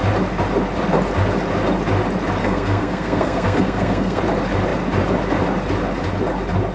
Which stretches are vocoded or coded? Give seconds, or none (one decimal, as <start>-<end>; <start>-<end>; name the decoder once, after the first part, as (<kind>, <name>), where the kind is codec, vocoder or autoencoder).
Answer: 2.4-4.2 (codec, SNAC)

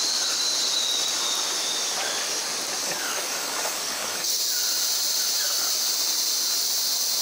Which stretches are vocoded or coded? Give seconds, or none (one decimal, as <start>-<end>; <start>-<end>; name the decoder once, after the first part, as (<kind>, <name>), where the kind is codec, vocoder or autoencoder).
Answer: 2.8-4.4 (codec, DAC)

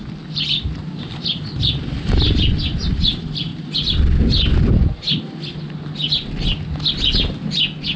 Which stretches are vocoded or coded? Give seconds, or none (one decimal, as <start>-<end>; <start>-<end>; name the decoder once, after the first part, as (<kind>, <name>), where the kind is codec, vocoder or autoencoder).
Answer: 0.0-0.8 (vocoder, BigVGAN v2); 1.8-3.5

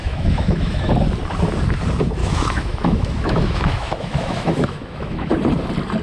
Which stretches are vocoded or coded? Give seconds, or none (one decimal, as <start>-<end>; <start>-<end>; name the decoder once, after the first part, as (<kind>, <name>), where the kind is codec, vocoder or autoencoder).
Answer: 0.0-0.9 (autoencoder, DAC-VAE); 2.2-5.3

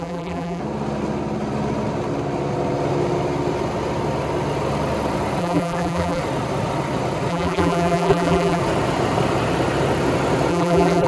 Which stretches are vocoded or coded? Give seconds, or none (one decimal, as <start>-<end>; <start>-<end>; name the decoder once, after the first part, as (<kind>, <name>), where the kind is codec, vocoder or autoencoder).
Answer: 0.0-0.6 (vocoder, BigVGAN v2); 5.4-6.2; 7.3-8.6; 10.5-11.1

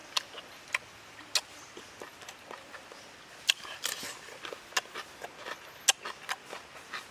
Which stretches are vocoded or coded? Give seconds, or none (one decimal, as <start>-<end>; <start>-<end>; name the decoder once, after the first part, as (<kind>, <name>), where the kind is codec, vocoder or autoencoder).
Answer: none

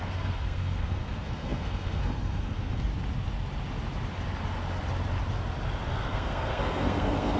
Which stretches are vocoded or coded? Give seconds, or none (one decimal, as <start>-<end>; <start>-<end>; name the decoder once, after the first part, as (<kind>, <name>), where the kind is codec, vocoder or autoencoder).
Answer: 0.0-2.9 (codec, SNAC); 5.9-7.4